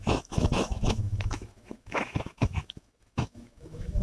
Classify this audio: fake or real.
fake